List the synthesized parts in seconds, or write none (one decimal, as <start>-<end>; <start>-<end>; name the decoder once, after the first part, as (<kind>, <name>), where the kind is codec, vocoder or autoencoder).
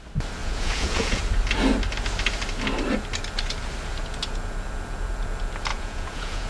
0.4-1.2 (vocoder, Vocos); 5.7-6.5